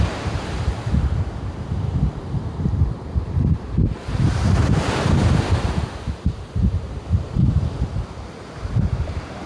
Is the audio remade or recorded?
remade